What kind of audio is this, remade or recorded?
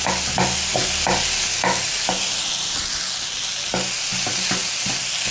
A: recorded